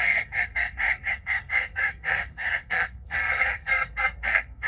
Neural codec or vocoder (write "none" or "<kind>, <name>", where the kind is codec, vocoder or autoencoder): codec, SNAC